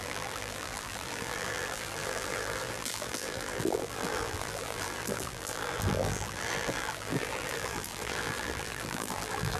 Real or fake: fake